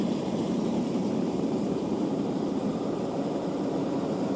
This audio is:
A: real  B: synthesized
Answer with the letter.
B